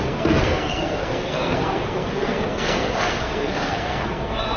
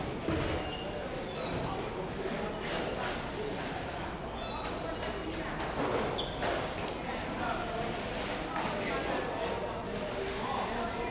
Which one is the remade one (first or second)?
first